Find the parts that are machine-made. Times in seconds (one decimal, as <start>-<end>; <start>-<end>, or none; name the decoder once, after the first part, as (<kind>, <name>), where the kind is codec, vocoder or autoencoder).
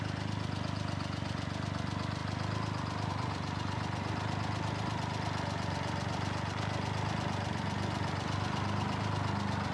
none